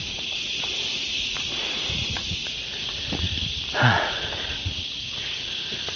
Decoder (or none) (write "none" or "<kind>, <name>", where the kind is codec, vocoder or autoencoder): vocoder, Vocos